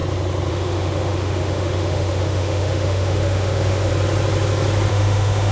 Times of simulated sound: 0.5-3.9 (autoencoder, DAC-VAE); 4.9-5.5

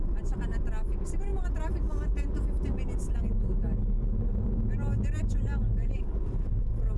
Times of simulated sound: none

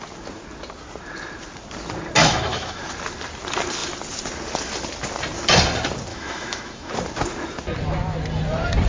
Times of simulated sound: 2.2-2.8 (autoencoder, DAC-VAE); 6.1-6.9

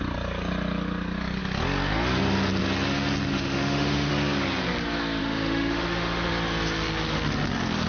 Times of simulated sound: 3.3-4.1 (autoencoder, DAC-VAE); 5.2-6.3